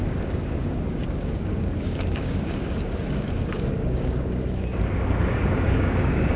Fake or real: fake